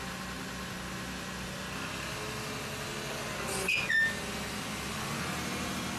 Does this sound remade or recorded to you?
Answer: recorded